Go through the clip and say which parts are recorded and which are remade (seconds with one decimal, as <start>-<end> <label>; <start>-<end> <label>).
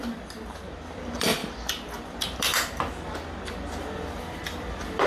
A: 0.0-1.4 remade; 1.4-2.0 recorded; 2.0-5.1 remade